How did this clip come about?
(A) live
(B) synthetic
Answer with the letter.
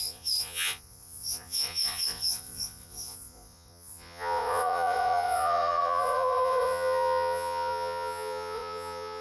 B